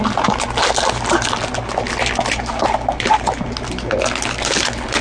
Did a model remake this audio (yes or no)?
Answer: no